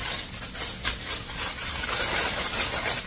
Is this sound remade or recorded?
recorded